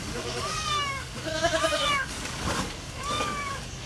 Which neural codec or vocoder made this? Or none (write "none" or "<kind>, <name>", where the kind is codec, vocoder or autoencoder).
codec, DAC